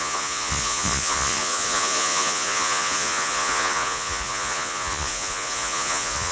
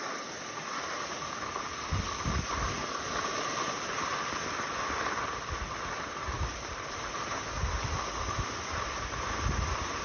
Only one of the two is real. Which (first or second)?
second